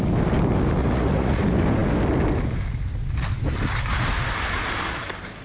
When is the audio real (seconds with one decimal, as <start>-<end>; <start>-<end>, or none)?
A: 0.0-0.8; 1.4-5.4